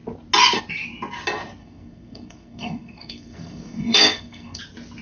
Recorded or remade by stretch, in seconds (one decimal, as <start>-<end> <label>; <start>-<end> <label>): 0.0-1.6 recorded; 1.6-4.6 remade; 4.6-5.0 recorded